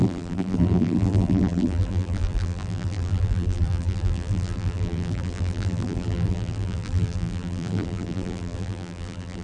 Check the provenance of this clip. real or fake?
fake